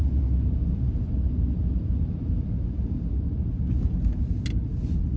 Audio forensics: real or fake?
real